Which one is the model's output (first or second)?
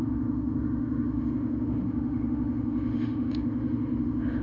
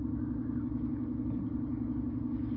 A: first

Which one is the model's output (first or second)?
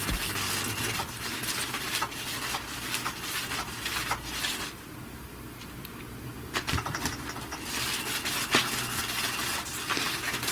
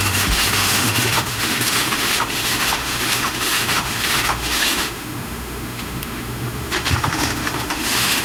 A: second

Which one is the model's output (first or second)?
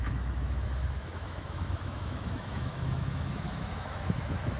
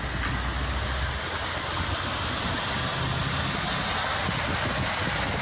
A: first